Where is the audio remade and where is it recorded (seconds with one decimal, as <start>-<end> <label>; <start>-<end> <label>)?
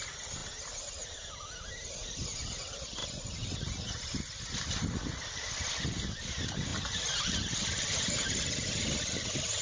0.0-3.0 recorded; 3.0-4.8 remade; 4.8-6.7 recorded; 6.7-7.2 remade; 7.2-9.6 recorded